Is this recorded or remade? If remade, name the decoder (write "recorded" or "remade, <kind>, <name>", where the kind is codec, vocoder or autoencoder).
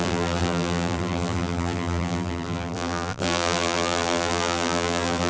remade, vocoder, BigVGAN v2